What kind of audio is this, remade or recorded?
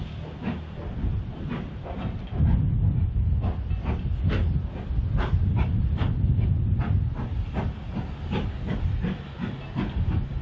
recorded